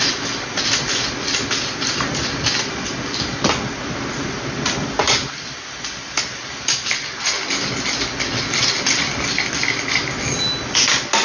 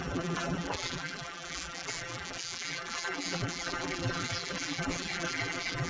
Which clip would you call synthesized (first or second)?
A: second